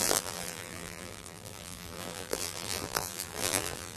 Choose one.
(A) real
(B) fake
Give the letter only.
B